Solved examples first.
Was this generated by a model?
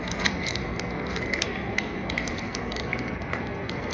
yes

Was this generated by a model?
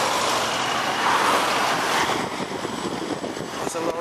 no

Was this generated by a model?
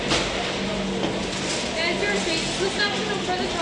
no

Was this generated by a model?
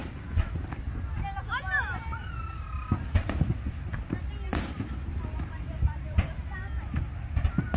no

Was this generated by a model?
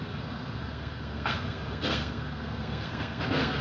yes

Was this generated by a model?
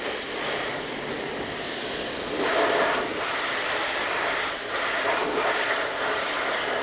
no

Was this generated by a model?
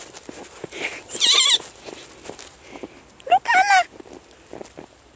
no